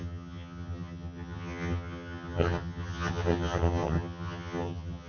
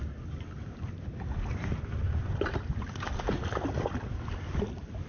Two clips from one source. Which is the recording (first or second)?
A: second